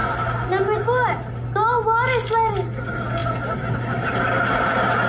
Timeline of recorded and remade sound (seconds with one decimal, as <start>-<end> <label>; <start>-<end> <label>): 0.0-5.1 recorded